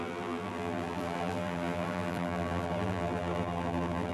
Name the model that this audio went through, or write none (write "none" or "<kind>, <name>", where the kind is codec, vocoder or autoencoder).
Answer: vocoder, BigVGAN v2